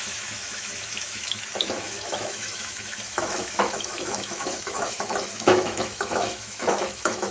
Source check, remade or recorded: remade